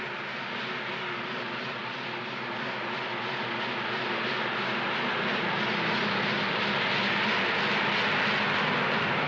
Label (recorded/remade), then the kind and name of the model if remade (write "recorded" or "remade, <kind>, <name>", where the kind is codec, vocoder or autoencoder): recorded